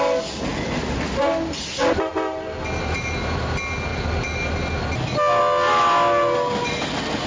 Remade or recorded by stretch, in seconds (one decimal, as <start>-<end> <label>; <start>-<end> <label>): 0.0-7.3 recorded